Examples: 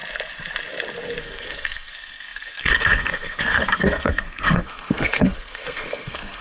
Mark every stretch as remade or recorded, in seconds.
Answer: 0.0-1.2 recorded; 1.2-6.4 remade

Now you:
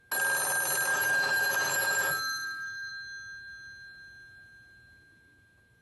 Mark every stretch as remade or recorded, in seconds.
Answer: 0.0-0.9 recorded; 0.9-2.9 remade; 2.9-5.8 recorded